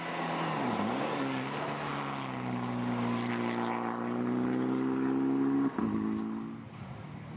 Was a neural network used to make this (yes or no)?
no